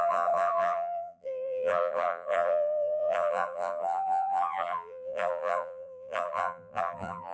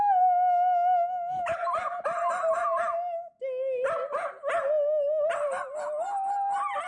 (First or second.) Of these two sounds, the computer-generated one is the first